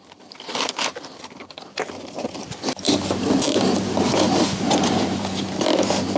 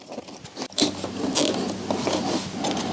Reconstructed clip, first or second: first